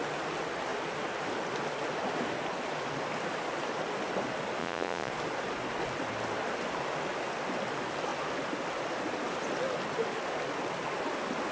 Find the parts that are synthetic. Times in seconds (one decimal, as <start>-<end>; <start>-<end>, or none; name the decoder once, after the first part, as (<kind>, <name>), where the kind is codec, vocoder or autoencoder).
4.6-5.1 (vocoder, Vocos)